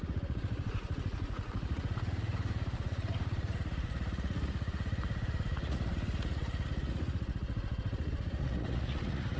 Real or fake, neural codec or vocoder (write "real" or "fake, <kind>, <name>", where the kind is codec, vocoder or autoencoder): fake, vocoder, Vocos